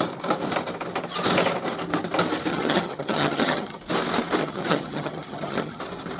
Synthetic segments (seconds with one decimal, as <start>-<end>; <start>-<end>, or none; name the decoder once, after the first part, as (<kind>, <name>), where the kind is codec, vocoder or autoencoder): 2.5-3.8 (vocoder, HiFi-GAN); 4.4-5.8